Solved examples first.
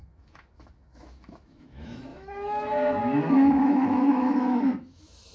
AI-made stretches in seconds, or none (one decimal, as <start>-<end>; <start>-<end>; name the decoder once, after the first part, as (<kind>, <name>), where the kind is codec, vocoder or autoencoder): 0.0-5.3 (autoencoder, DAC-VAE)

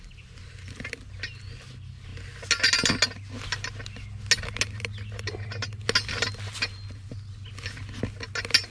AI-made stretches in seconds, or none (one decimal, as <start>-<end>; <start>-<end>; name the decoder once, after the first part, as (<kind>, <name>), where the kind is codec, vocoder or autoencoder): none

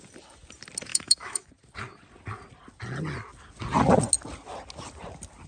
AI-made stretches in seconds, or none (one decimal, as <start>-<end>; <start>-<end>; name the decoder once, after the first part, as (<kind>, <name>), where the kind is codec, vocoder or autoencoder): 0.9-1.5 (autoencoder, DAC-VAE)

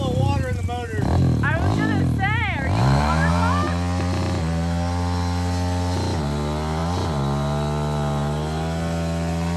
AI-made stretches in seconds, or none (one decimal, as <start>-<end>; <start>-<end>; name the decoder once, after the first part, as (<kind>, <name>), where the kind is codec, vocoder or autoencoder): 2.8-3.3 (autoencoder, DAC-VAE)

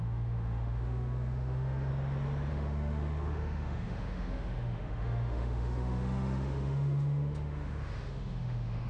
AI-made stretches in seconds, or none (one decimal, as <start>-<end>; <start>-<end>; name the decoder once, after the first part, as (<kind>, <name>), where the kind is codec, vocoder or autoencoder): 0.0-1.9 (autoencoder, DAC-VAE); 2.5-8.9

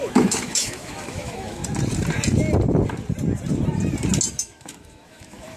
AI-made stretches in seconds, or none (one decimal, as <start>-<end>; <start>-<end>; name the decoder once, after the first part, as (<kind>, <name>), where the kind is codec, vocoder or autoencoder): 0.0-1.6 (autoencoder, DAC-VAE); 4.3-5.6